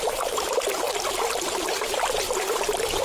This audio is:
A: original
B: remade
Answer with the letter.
A